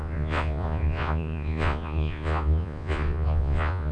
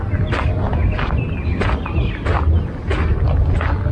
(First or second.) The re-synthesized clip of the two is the first